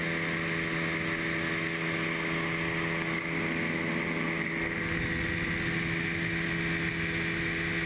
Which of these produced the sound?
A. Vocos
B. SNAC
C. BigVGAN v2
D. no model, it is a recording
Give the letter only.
D